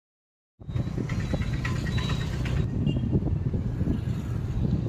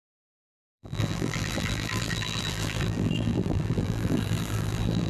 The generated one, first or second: second